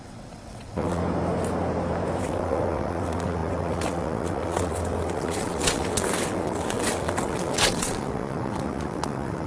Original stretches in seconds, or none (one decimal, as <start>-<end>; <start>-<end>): 1.0-2.2